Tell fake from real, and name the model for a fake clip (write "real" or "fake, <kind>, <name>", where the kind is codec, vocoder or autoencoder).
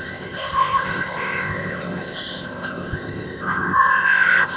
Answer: fake, codec, ZipCodec